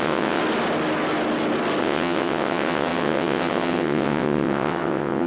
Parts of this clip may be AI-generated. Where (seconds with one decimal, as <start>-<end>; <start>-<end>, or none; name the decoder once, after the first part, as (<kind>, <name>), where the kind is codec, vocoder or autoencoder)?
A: 0.0-0.4 (vocoder, WaveNeXt); 1.8-5.3